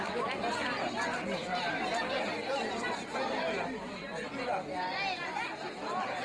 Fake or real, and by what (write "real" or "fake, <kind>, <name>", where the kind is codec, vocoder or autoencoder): real